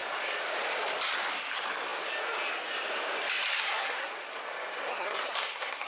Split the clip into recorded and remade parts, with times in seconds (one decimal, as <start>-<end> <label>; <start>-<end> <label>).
0.0-3.5 recorded; 3.5-4.1 remade; 4.1-4.9 recorded; 4.9-5.9 remade